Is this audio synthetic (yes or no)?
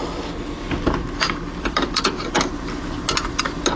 no